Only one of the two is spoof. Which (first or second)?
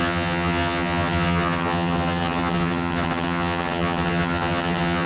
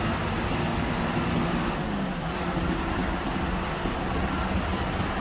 first